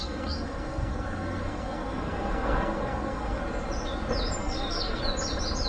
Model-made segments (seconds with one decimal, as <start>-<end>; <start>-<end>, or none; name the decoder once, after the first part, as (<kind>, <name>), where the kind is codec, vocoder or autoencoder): 0.0-3.4 (codec, SNAC); 4.4-5.0